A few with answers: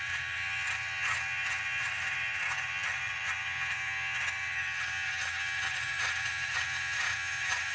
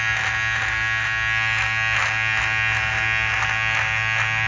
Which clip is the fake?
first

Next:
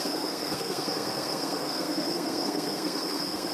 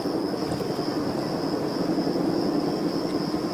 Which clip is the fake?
first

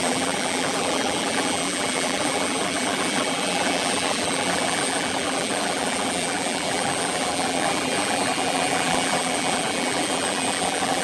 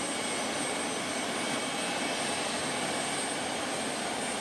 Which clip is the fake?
first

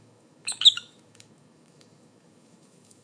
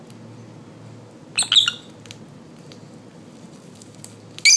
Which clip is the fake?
first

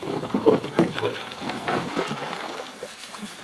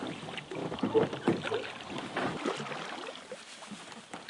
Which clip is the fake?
first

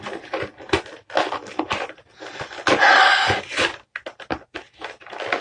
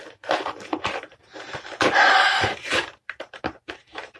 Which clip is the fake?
second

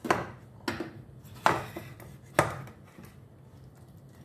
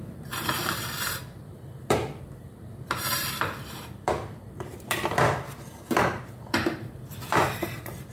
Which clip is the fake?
second